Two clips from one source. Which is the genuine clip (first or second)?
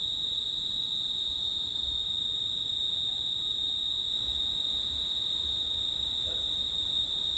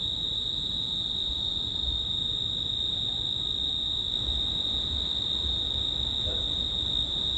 second